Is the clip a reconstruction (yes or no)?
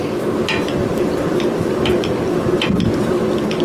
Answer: no